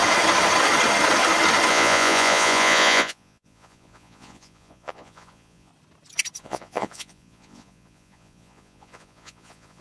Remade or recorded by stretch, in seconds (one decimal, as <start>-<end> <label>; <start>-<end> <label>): 0.0-1.7 recorded; 1.7-5.7 remade; 5.7-6.4 recorded; 6.4-9.8 remade